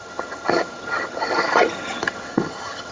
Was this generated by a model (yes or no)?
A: yes